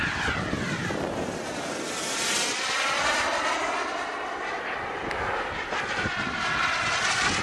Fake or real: real